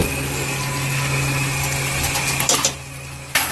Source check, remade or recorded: recorded